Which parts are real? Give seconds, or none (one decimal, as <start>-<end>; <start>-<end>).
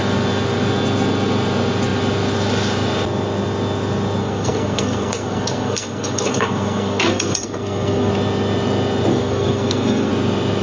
0.0-4.2; 8.1-9.1; 10.1-10.6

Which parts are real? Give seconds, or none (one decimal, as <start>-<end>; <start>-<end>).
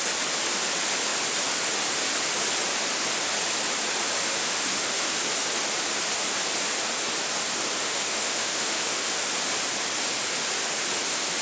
0.0-4.2; 5.2-7.8; 9.3-11.4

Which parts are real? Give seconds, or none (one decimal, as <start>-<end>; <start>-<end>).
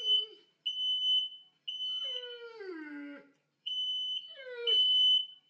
0.0-2.7